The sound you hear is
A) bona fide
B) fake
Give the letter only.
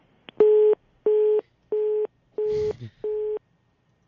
A